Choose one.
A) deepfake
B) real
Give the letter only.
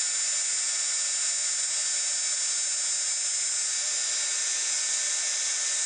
B